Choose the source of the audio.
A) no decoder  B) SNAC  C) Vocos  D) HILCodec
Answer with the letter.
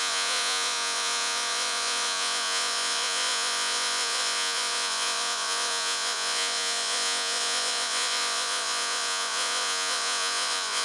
C